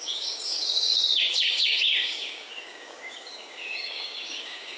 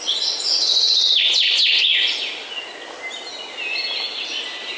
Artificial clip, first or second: first